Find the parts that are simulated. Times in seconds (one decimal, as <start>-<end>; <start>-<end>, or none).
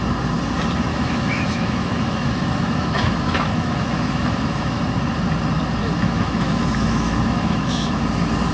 0.9-4.8; 5.8-8.0